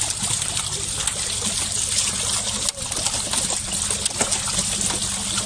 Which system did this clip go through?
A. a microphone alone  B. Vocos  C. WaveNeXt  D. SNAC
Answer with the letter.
A